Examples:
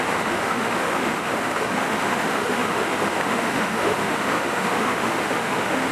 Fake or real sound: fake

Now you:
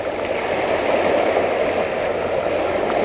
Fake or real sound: real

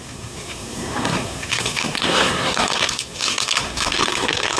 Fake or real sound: fake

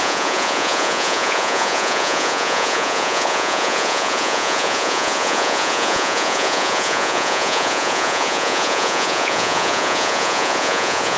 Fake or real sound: fake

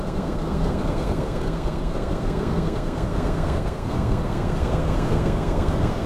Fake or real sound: fake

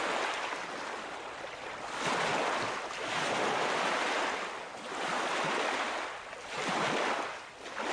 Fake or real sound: real